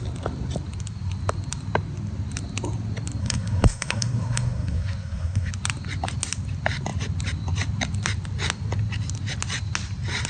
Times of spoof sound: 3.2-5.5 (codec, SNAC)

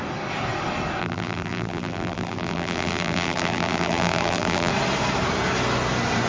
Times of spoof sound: 1.0-4.7 (vocoder, BigVGAN v2)

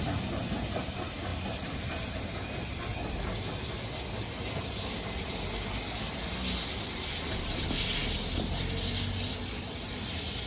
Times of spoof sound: none

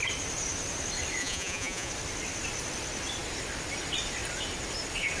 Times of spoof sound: 1.2-1.9 (vocoder, Vocos)

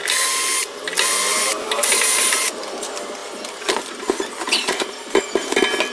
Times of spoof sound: 1.3-2.3 (vocoder, BigVGAN v2)

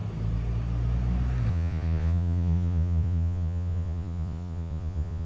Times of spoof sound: 1.5-5.3 (vocoder, Vocos)

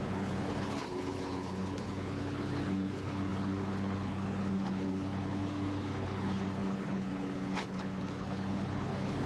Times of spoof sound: 0.0-9.3 (codec, HILCodec)

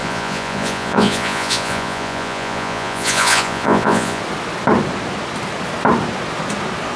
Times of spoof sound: 0.0-4.2 (vocoder, Vocos)